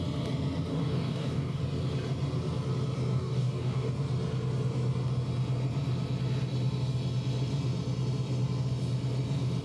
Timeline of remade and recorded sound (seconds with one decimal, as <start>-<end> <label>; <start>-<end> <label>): 0.0-0.7 recorded; 0.7-1.6 remade; 1.6-3.1 recorded; 3.1-3.9 remade; 3.9-9.6 recorded